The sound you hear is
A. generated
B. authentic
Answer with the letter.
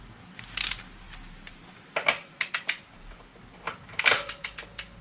B